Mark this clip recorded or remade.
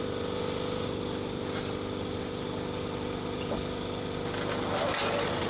recorded